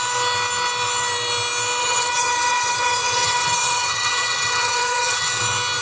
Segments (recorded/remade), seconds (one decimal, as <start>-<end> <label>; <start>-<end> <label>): 0.0-1.8 recorded; 1.8-5.3 remade; 5.3-5.8 recorded